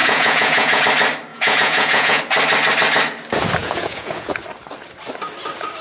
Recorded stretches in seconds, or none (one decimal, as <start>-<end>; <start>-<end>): 0.8-1.3; 2.2-3.6; 4.4-5.8